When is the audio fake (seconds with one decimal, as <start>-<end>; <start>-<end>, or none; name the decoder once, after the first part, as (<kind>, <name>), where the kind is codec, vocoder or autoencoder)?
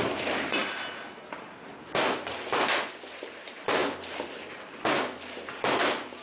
none